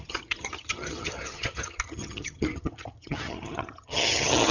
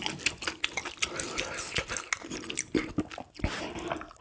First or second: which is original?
second